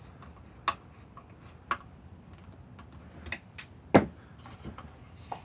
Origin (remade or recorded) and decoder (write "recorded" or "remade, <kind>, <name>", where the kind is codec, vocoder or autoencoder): recorded